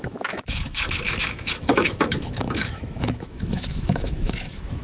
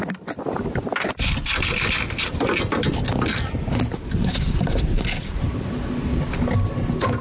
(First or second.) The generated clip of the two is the first